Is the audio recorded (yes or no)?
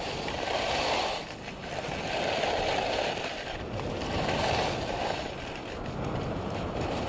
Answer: yes